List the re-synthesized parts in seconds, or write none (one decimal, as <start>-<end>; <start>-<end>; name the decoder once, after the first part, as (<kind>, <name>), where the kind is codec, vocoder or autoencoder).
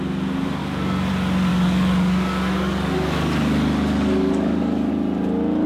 0.6-1.1 (codec, DAC); 1.5-4.9